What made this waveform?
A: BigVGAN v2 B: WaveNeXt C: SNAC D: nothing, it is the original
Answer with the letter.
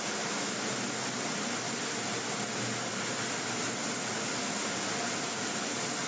D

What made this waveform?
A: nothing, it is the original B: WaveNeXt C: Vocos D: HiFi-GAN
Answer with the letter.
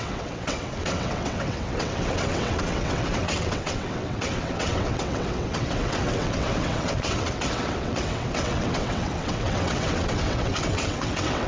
B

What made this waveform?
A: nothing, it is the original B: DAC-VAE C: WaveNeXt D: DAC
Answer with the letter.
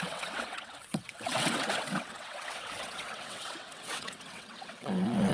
C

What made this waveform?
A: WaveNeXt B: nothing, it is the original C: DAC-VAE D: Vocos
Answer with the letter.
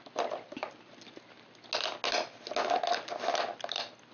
B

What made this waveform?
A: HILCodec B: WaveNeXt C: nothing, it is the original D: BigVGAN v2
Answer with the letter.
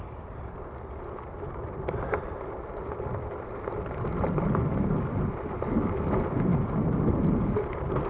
C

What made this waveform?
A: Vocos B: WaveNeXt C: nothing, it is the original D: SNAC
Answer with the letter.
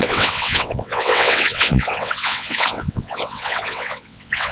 B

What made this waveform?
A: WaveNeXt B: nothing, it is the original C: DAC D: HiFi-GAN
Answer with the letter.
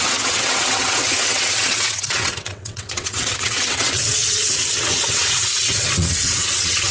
A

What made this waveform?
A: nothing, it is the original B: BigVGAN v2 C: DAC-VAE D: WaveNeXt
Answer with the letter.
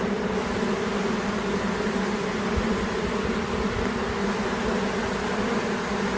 A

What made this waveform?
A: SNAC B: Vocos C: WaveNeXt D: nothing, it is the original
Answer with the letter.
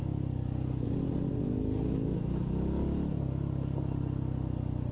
D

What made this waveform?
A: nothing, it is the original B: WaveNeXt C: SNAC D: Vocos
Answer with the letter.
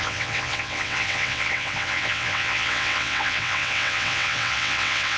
B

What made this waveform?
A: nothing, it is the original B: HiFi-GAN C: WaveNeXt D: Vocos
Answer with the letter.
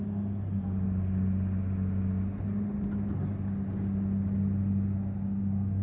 A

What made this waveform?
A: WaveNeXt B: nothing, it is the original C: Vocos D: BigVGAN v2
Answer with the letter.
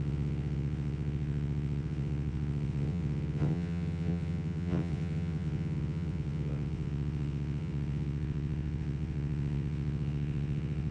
A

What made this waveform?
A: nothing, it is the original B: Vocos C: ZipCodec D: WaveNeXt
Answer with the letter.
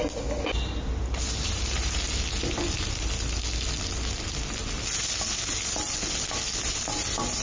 A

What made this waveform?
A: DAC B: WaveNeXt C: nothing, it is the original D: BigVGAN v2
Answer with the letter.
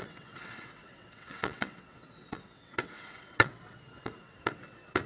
B